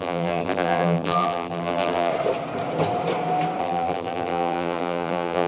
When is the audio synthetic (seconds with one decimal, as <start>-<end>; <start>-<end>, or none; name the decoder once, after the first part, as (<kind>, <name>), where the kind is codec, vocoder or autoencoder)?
0.0-2.1 (vocoder, BigVGAN v2); 3.6-5.5